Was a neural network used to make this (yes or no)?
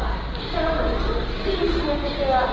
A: no